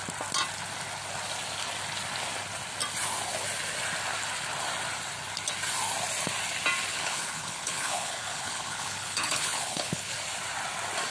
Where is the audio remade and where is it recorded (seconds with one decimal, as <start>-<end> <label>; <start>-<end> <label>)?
0.0-6.9 recorded; 6.9-10.1 remade; 10.1-11.1 recorded